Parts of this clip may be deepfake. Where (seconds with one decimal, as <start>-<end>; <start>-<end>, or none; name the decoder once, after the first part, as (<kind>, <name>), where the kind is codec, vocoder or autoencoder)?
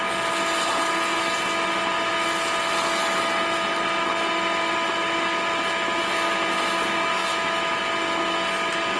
none